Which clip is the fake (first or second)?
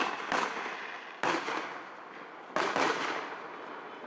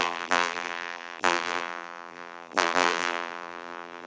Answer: second